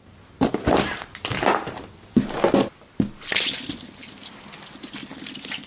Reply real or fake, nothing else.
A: real